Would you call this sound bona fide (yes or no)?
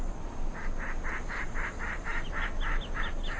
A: yes